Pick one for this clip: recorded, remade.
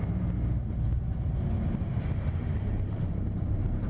remade